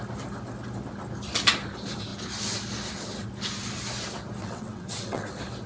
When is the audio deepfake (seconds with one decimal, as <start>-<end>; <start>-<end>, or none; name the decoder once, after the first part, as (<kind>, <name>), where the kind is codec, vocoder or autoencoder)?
4.4-5.3 (vocoder, WaveNeXt)